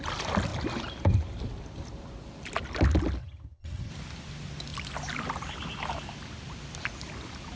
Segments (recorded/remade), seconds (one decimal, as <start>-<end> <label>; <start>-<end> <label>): 0.0-3.2 recorded; 3.2-3.9 remade; 3.9-7.6 recorded